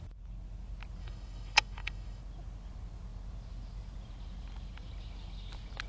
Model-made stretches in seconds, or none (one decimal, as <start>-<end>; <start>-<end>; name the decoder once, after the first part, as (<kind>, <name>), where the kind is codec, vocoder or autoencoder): 1.0-2.2 (autoencoder, DAC-VAE)